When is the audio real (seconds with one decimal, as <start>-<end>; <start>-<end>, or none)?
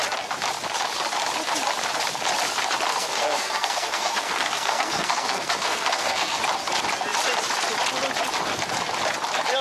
0.0-2.9; 6.4-9.6